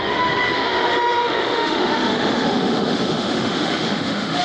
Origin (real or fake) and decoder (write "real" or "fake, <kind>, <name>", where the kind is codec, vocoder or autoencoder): fake, autoencoder, DAC-VAE